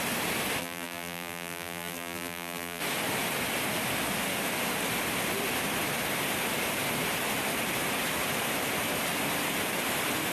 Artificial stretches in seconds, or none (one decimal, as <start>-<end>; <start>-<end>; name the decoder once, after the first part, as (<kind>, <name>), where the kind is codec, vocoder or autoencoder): 0.6-2.8 (vocoder, BigVGAN v2)